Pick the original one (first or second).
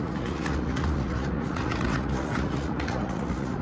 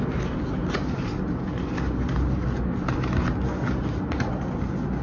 second